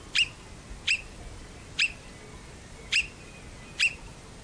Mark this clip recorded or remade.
recorded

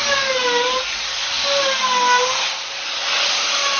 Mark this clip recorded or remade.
recorded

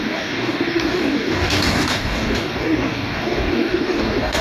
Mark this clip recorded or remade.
remade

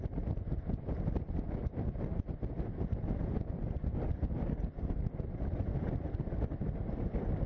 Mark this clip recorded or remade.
recorded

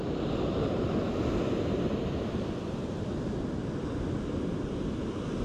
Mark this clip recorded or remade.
recorded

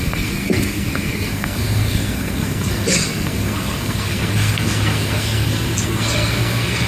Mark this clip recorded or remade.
remade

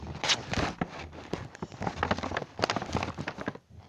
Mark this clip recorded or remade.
recorded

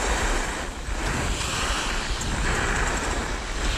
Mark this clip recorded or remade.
recorded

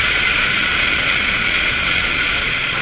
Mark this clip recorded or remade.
remade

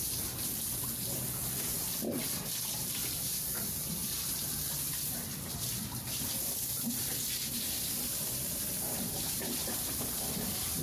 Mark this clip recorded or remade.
remade